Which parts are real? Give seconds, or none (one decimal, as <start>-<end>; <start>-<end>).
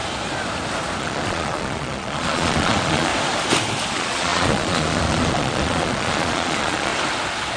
0.0-1.0; 3.1-3.9; 6.9-7.6